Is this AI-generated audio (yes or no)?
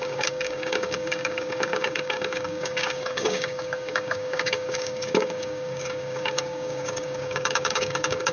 yes